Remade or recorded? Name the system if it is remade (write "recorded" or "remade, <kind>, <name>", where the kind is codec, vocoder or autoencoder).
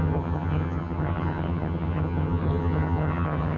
remade, vocoder, HiFi-GAN